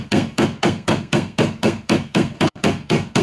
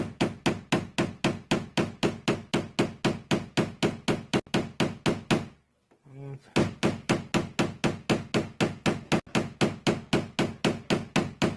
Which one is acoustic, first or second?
second